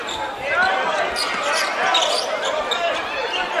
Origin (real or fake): real